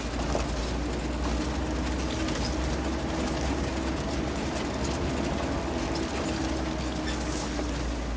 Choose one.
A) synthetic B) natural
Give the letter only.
B